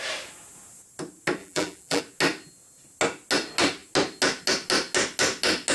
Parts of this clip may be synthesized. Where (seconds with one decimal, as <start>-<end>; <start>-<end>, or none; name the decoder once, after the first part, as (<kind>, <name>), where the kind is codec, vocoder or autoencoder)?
1.4-2.0 (vocoder, BigVGAN v2)